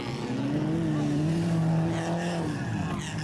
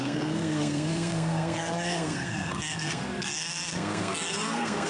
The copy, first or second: second